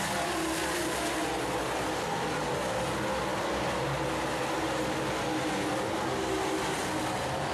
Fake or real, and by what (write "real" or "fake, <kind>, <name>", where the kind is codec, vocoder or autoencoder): real